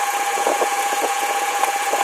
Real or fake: fake